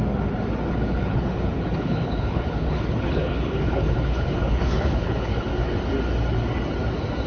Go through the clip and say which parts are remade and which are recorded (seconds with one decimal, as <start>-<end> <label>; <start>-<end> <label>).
0.0-0.7 recorded; 0.7-5.5 remade; 5.5-7.3 recorded